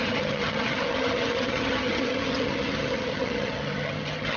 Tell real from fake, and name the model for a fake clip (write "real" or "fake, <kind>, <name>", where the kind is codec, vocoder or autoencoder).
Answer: fake, vocoder, HiFi-GAN